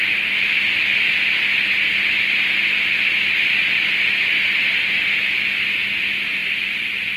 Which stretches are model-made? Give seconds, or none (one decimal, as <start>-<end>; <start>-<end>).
6.4-7.2